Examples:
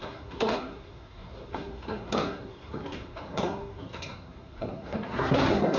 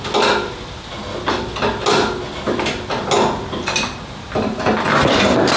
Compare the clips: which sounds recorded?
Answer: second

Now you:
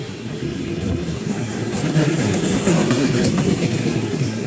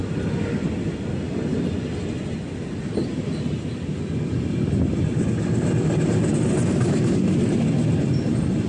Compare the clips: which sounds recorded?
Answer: second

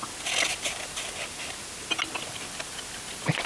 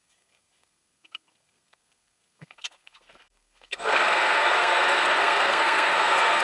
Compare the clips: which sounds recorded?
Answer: first